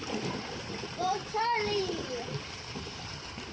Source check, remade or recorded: remade